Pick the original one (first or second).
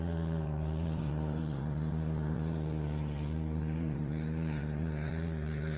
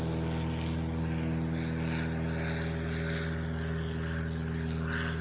second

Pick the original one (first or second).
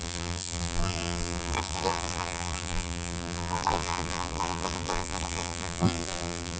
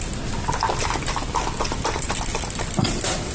second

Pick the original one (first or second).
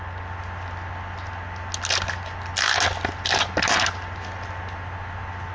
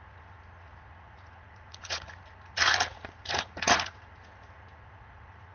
first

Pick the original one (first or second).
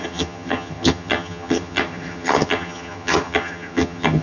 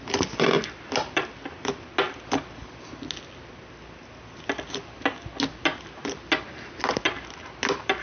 second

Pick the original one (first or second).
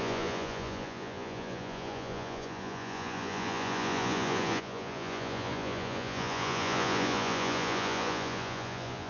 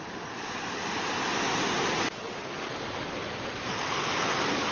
second